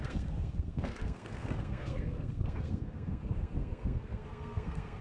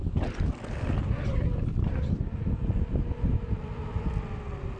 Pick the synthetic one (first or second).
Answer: first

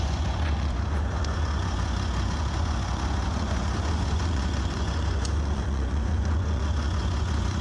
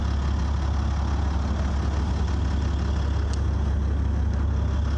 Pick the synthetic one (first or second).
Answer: first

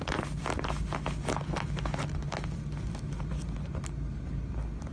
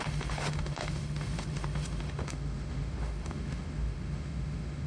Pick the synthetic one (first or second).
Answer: second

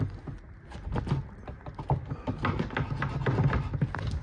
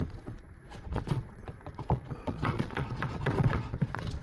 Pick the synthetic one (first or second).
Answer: second